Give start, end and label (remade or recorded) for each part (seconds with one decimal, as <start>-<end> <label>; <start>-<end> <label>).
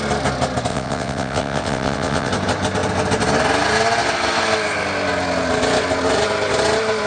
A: 0.0-0.7 recorded; 0.7-2.3 remade; 2.3-7.1 recorded